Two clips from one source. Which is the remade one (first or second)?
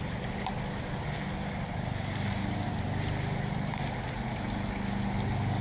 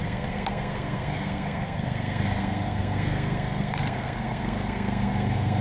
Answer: second